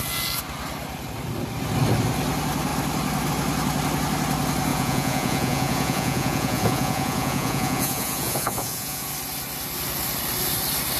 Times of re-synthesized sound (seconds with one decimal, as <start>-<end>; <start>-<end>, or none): 4.7-9.1